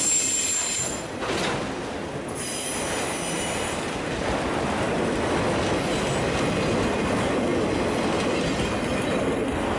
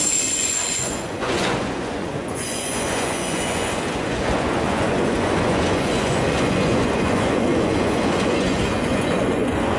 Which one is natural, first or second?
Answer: first